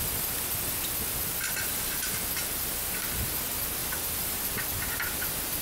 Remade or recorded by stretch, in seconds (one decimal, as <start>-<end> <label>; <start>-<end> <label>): 0.0-3.8 recorded; 3.8-4.4 remade; 4.4-5.6 recorded